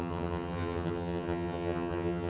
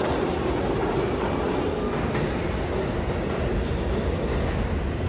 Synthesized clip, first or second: first